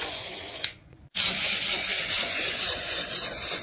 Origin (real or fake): fake